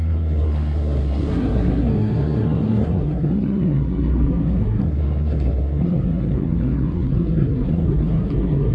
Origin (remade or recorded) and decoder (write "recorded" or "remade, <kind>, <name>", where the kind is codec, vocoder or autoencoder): remade, codec, SNAC